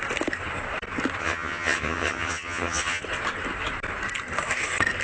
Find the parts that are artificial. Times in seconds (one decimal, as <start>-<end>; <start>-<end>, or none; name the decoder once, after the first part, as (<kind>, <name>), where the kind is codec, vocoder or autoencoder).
1.2-3.0 (vocoder, HiFi-GAN)